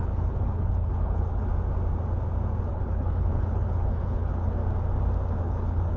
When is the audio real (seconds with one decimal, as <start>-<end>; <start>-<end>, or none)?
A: 1.5-2.7; 4.6-5.4